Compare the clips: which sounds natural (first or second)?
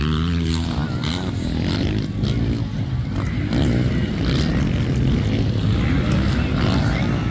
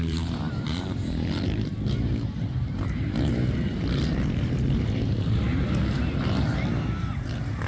first